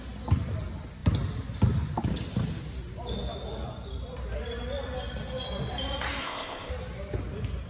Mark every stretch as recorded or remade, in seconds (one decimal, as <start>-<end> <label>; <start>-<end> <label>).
0.0-6.2 recorded; 6.2-6.7 remade; 6.7-7.7 recorded